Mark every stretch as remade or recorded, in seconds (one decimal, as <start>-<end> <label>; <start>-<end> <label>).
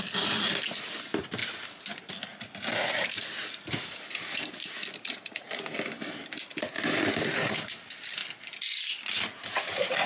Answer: 0.0-8.2 remade; 8.2-9.4 recorded; 9.4-10.1 remade